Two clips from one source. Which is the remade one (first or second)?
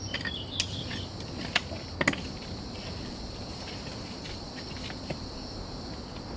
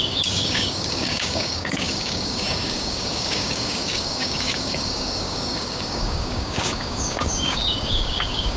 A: second